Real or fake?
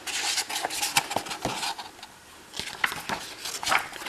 real